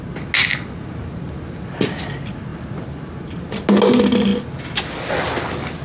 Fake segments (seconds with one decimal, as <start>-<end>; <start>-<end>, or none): none